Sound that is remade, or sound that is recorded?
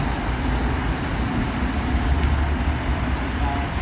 recorded